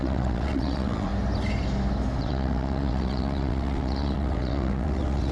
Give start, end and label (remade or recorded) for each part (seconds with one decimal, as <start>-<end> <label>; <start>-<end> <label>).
0.0-1.1 remade; 1.1-2.2 recorded; 2.2-5.3 remade